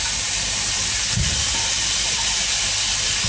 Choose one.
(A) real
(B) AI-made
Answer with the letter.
A